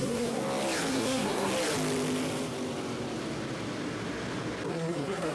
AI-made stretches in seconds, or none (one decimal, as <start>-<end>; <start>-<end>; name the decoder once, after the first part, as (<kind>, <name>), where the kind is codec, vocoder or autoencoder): 0.0-0.4 (codec, SNAC); 0.9-1.5; 4.7-5.3

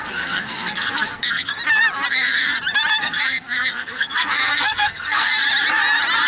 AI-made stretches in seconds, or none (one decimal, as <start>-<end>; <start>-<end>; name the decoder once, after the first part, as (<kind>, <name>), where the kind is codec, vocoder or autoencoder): 0.0-1.5 (codec, SNAC); 2.1-2.5; 3.0-5.3

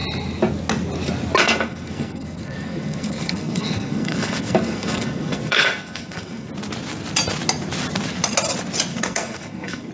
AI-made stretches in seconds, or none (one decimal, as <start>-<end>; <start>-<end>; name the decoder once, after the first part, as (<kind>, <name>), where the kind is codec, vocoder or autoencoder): 1.4-6.5 (codec, SNAC); 8.9-9.9

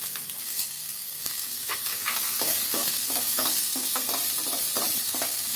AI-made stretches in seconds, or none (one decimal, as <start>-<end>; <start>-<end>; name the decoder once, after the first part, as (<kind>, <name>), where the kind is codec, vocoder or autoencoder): 0.0-4.1 (codec, SNAC); 5.0-5.6

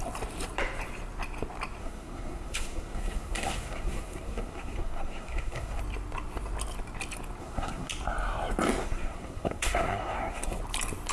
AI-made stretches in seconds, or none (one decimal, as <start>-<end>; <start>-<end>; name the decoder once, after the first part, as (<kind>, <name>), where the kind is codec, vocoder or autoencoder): 1.8-5.8 (codec, SNAC); 7.4-7.9; 8.8-10.6

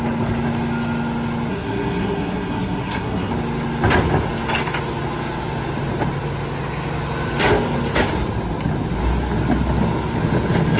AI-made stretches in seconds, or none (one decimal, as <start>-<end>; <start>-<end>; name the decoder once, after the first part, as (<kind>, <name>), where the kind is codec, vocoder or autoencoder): 1.5-3.3 (codec, SNAC)